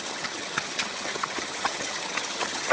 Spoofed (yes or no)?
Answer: yes